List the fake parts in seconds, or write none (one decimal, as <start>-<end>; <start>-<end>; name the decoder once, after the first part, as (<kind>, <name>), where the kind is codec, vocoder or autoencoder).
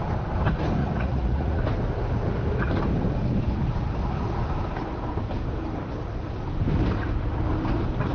0.8-1.6 (vocoder, Vocos)